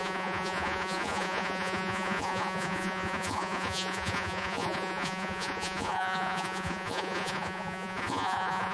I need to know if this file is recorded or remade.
remade